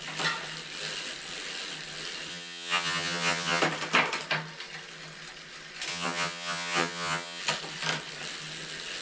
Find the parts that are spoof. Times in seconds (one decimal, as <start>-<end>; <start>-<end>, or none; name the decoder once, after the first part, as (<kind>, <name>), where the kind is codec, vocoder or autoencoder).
2.3-3.6 (vocoder, HiFi-GAN); 5.9-7.4